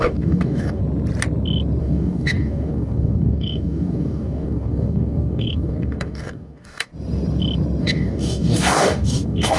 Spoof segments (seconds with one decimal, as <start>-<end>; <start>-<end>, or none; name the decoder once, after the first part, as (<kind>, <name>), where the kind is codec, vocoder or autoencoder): 0.0-0.8 (codec, DAC); 1.8-6.9; 7.8-9.6